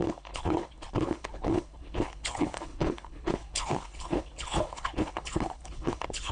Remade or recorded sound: remade